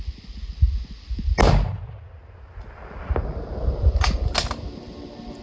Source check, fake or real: real